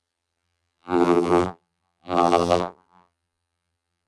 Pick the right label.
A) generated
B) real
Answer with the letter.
A